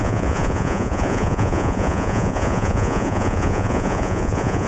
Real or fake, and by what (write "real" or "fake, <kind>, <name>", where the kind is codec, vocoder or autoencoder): fake, vocoder, Vocos